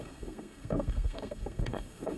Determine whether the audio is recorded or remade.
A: remade